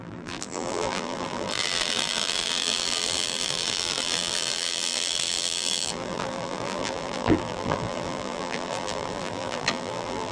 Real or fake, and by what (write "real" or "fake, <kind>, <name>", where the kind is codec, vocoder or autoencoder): fake, vocoder, BigVGAN v2